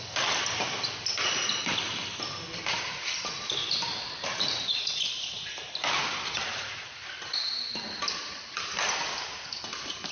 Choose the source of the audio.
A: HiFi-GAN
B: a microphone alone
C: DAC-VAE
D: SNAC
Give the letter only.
B